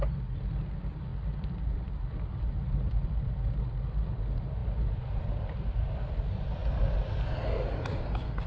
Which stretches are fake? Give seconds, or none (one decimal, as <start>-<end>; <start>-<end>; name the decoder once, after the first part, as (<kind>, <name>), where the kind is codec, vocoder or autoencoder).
1.1-2.3 (vocoder, BigVGAN v2)